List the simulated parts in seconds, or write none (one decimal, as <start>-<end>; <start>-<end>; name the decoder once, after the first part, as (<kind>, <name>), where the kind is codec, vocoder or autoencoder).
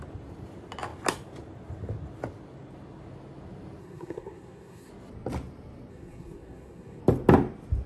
3.8-4.9 (codec, SNAC); 5.9-7.0